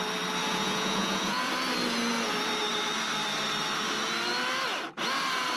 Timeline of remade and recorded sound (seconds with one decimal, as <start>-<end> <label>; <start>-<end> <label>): 0.0-0.4 recorded; 0.4-1.5 remade; 1.5-5.6 recorded